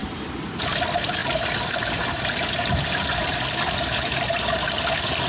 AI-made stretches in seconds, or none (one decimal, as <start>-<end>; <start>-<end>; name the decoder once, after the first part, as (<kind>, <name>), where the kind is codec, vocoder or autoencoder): 0.0-0.6 (vocoder, BigVGAN v2); 1.2-4.4